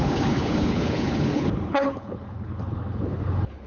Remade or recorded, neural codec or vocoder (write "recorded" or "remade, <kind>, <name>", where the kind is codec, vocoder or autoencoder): remade, codec, HILCodec